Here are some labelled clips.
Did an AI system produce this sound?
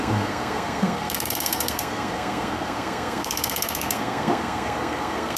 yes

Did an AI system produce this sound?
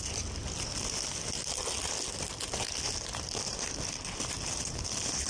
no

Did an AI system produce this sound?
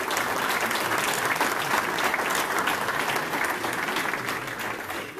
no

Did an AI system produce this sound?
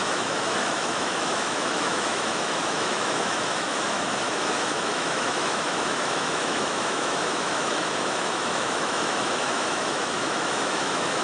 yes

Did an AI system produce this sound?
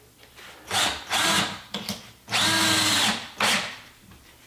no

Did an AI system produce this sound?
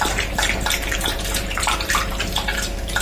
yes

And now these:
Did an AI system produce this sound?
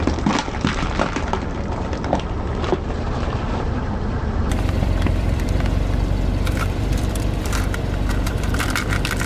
yes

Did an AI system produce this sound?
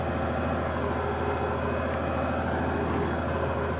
no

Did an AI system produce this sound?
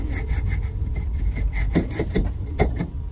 no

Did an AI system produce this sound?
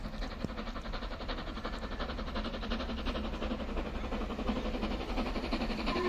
no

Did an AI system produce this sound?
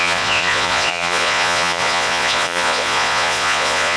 yes